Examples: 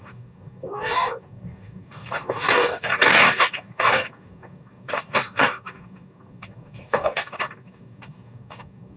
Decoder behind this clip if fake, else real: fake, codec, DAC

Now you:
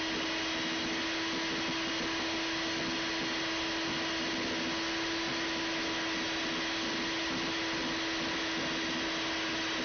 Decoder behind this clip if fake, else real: real